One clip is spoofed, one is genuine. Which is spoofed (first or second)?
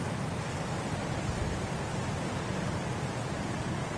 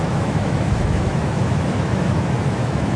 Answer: second